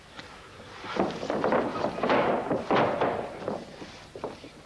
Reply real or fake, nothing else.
real